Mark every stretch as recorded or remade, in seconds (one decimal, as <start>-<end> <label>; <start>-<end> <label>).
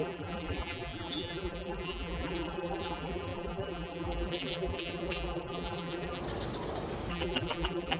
0.0-6.2 remade; 6.2-7.1 recorded; 7.1-8.0 remade